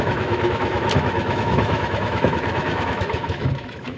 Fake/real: fake